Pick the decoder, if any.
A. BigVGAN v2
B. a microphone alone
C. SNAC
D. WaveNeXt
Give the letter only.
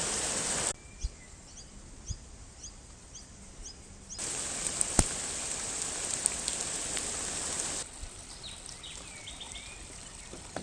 B